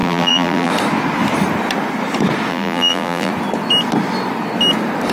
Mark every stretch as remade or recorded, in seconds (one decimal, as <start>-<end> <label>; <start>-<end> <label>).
0.0-0.7 remade; 0.7-2.5 recorded; 2.5-3.3 remade; 3.3-5.1 recorded